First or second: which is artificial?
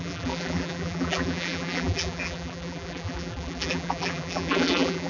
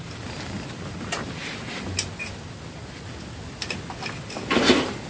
first